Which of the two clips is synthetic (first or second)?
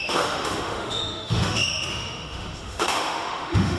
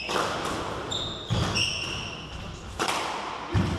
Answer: first